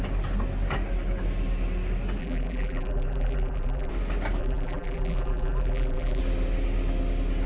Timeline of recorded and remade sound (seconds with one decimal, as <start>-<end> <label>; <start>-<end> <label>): 0.0-2.2 recorded; 2.2-3.9 remade; 3.9-4.4 recorded; 4.4-6.2 remade; 6.2-7.5 recorded